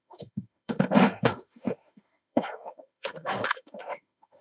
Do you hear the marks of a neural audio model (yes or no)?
yes